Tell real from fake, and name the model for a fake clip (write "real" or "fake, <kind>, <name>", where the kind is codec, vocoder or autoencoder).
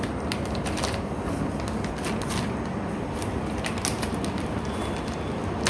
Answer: real